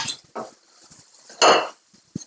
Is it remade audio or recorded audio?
recorded